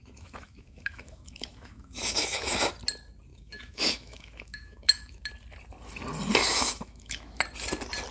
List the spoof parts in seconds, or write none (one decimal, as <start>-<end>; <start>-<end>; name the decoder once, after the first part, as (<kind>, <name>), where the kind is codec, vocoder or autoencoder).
0.0-2.7 (autoencoder, DAC-VAE); 3.3-5.3; 6.5-7.4